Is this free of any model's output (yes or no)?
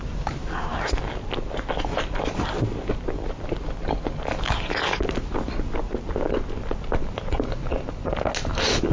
yes